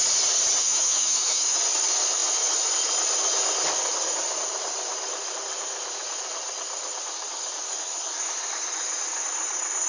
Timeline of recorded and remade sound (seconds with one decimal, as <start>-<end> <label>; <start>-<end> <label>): 0.0-0.6 recorded; 0.6-1.6 remade; 1.6-9.9 recorded